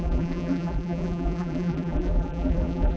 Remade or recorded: remade